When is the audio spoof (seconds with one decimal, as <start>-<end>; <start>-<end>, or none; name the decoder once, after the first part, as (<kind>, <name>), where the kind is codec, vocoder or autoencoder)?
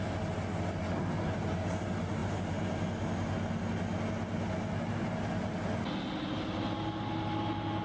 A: 2.2-2.8 (vocoder, BigVGAN v2)